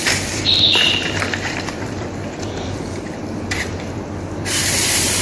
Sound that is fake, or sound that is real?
fake